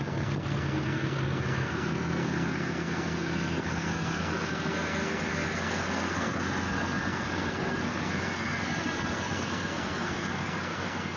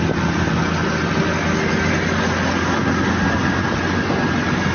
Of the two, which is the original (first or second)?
second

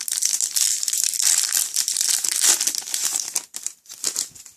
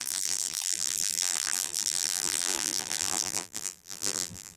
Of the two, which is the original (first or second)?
first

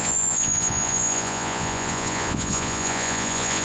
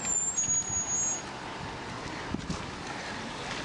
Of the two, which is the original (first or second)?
second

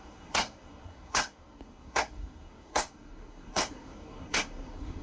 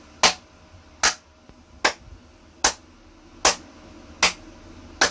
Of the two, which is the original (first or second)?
second